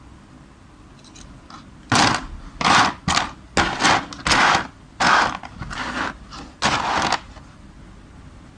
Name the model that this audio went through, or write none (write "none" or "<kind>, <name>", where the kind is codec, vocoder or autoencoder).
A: none